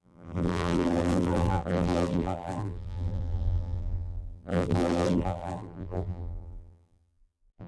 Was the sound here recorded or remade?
remade